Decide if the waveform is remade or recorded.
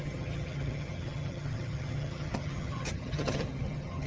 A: remade